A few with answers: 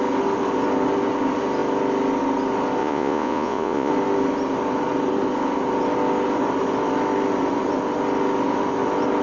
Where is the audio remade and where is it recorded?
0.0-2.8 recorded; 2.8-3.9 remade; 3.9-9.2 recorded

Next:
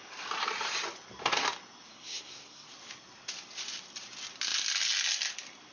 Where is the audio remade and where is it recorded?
0.0-1.9 recorded; 1.9-2.7 remade; 2.7-5.7 recorded

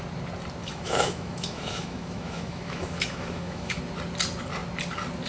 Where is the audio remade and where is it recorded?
0.0-0.6 recorded; 0.6-3.8 remade; 3.8-5.3 recorded

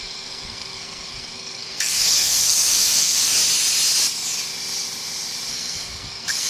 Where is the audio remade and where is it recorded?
0.0-3.4 remade; 3.4-5.5 recorded; 5.5-6.5 remade

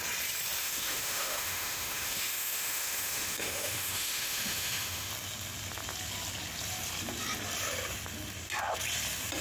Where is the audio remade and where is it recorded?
0.0-0.6 recorded; 0.6-5.1 remade; 5.1-9.4 recorded